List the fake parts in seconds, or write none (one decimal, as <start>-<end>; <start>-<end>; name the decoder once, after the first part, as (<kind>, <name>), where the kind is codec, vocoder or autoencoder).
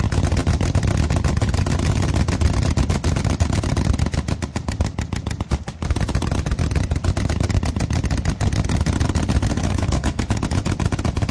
9.5-10.2 (codec, SNAC)